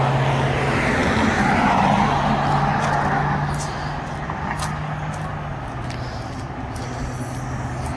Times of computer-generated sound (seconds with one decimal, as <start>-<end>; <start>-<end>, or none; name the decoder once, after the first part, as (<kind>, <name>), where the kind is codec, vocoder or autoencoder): none